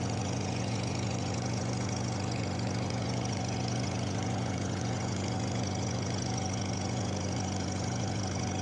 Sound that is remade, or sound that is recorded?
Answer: remade